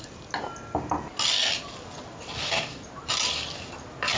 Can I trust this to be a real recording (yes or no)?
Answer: yes